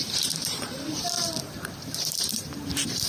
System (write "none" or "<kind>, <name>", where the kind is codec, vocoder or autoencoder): vocoder, BigVGAN v2